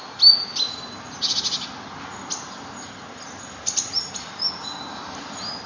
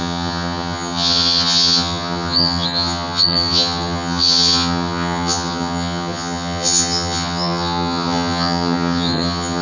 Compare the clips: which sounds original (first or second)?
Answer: first